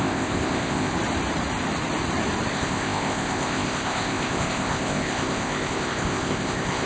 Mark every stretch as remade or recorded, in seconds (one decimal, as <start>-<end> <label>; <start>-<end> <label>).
0.0-0.9 remade; 0.9-2.5 recorded; 2.5-6.8 remade